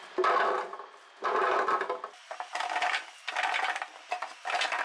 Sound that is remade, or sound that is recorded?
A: recorded